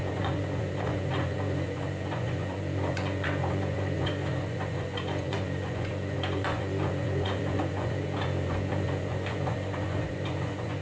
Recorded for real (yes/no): no